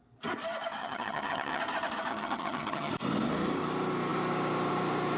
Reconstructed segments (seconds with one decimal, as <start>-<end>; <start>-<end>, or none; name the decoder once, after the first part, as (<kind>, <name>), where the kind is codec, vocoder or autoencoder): 0.8-1.6 (vocoder, HiFi-GAN); 2.1-2.9